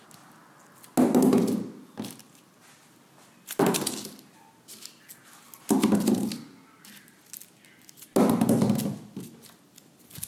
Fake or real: real